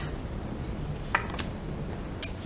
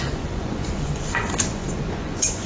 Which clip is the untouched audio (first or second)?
first